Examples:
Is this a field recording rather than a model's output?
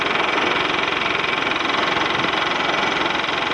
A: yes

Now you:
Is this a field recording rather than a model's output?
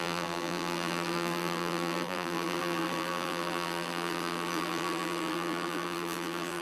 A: no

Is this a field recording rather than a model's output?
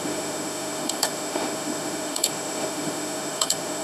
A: no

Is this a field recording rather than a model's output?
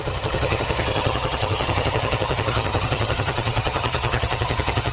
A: no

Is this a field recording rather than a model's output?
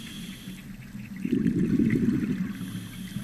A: yes